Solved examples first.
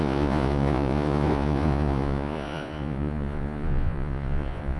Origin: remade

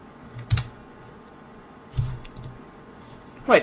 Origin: remade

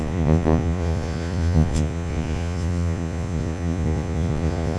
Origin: remade